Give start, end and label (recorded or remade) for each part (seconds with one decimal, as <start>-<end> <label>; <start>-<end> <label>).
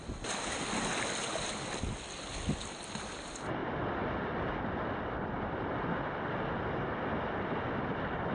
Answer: 0.0-8.3 recorded